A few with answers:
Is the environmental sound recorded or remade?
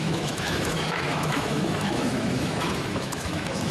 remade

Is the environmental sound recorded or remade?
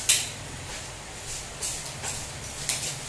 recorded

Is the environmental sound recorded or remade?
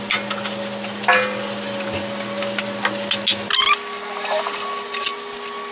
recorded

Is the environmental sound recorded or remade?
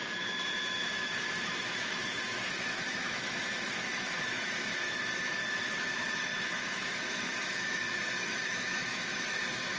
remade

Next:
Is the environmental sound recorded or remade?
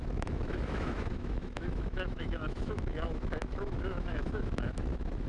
remade